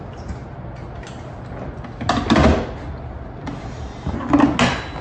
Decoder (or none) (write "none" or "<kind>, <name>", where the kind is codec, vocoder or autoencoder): none